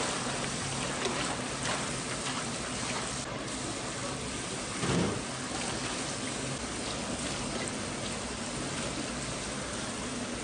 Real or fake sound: real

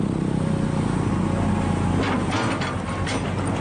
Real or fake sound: real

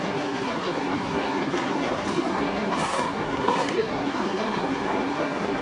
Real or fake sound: fake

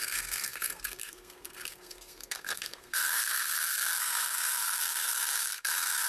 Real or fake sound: fake